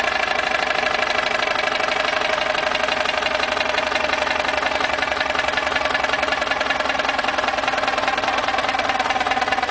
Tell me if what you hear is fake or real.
real